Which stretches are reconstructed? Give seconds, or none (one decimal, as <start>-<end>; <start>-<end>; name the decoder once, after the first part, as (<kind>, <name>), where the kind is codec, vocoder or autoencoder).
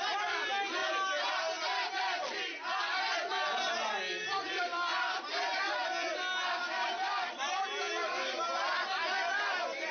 0.8-1.9 (vocoder, BigVGAN v2)